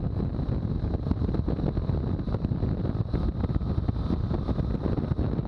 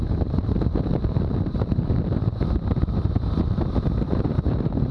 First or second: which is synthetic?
second